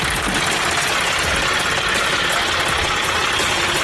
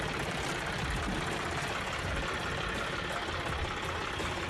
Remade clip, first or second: second